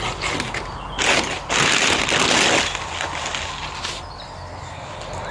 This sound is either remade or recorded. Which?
recorded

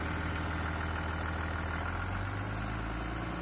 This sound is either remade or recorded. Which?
recorded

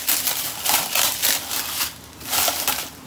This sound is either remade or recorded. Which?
recorded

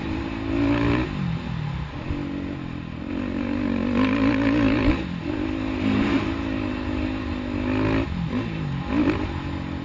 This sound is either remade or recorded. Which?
recorded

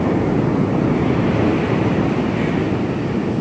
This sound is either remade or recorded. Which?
recorded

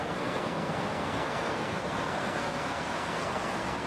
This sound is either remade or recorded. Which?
remade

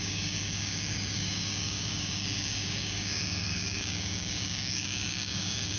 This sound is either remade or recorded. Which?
remade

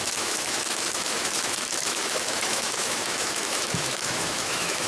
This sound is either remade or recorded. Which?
remade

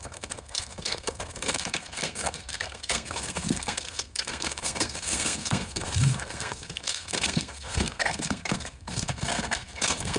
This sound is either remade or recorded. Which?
remade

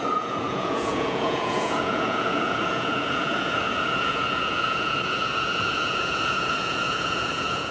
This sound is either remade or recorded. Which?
remade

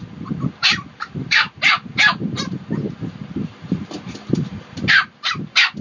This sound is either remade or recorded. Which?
remade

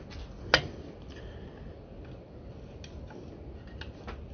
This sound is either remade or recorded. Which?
recorded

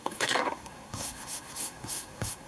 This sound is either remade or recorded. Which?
remade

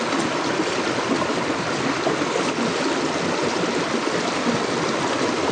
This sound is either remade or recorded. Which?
recorded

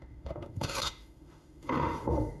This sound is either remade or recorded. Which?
remade